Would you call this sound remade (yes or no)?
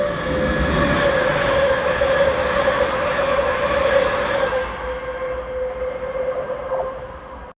no